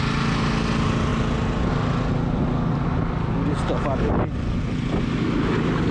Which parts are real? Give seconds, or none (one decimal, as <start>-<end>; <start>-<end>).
0.0-5.9